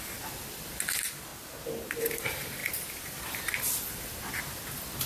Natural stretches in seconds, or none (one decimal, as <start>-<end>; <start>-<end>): 1.3-2.2